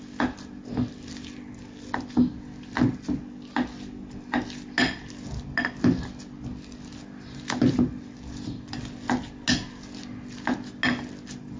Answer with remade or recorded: recorded